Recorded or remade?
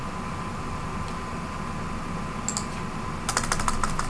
recorded